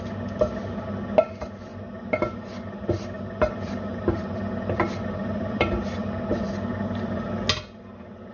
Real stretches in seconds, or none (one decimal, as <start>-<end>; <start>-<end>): 0.0-1.7; 6.4-8.3